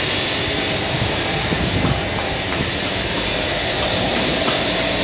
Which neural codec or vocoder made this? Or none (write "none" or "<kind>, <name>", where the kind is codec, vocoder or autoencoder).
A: vocoder, BigVGAN v2